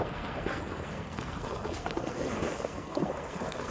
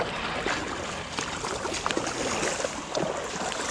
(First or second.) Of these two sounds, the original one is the second